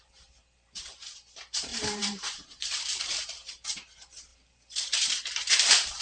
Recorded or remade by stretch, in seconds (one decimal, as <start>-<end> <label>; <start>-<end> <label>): 0.0-6.0 remade